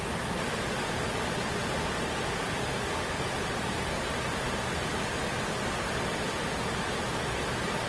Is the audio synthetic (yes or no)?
no